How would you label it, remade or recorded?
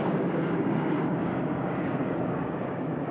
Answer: remade